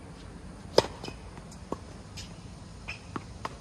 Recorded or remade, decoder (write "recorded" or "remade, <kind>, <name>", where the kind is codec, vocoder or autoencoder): recorded